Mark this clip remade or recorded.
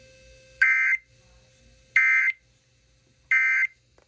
recorded